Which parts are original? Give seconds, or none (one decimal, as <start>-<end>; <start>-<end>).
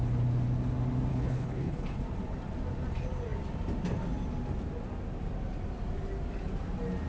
0.0-1.1; 2.0-7.1